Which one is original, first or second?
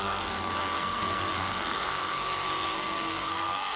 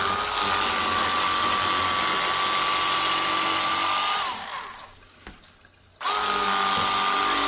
second